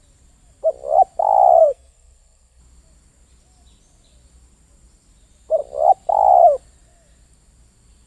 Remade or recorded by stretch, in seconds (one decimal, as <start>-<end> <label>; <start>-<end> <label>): 0.0-1.6 recorded; 1.6-2.6 remade; 2.6-8.1 recorded